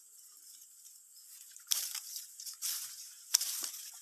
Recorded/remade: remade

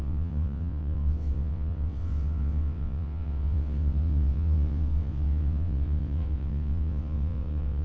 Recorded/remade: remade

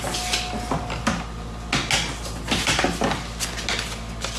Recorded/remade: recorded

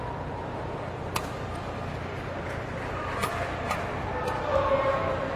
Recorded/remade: recorded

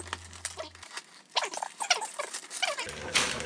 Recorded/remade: recorded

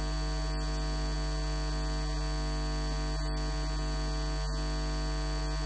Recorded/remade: recorded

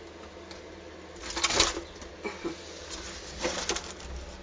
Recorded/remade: recorded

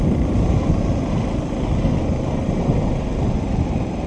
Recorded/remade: recorded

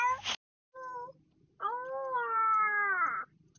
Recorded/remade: recorded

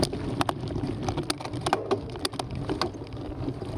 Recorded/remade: recorded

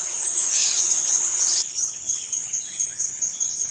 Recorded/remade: remade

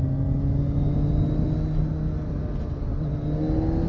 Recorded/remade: recorded